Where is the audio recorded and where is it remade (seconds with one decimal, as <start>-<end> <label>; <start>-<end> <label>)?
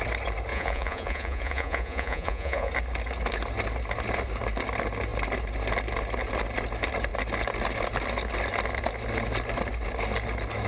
0.0-0.5 recorded; 0.5-2.7 remade; 2.7-10.7 recorded